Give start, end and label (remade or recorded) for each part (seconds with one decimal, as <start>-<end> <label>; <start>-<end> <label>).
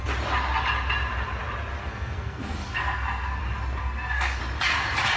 0.0-1.8 recorded; 1.8-3.4 remade; 3.4-3.8 recorded; 3.8-4.4 remade; 4.4-5.2 recorded